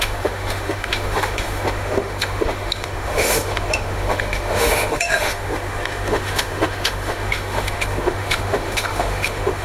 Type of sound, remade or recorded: remade